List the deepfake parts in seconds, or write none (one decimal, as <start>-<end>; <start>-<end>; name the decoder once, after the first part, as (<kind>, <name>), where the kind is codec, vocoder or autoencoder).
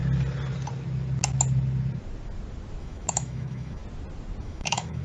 2.8-3.8 (autoencoder, DAC-VAE); 4.4-5.0